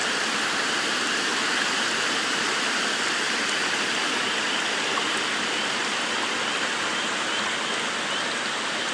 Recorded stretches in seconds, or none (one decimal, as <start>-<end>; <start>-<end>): 0.0-8.9